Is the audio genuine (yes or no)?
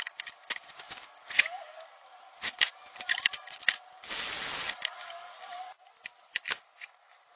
yes